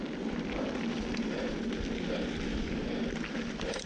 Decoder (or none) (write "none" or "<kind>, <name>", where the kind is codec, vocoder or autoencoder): none